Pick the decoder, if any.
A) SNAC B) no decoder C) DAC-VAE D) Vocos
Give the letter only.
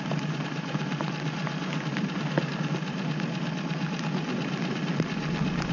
B